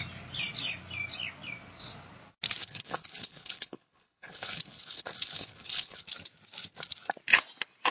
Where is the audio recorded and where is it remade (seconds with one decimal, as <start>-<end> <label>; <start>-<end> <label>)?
0.0-2.6 recorded; 2.6-6.0 remade; 6.0-7.9 recorded